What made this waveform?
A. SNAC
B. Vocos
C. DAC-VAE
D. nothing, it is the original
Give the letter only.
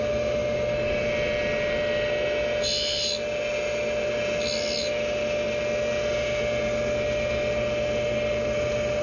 D